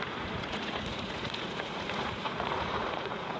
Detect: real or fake fake